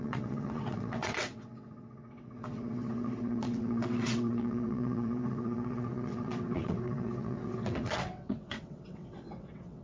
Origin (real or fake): fake